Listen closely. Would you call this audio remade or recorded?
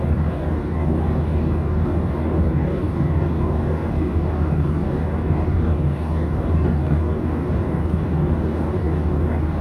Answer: remade